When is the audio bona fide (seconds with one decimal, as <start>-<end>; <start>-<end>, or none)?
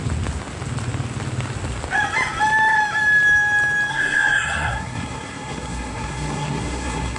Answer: 0.0-3.9